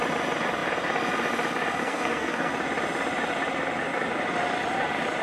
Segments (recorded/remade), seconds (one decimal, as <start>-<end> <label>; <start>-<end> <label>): 0.0-1.8 recorded; 1.8-2.5 remade; 2.5-5.2 recorded